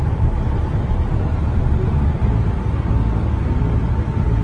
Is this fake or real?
real